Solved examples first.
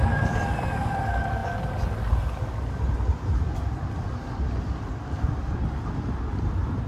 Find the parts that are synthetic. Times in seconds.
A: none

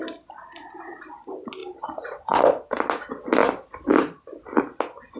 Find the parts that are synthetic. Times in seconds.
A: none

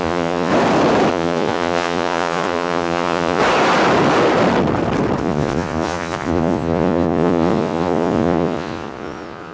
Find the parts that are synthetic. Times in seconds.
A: 0.0-0.5; 1.1-3.4; 5.2-9.5